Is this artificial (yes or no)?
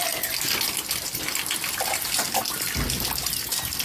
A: no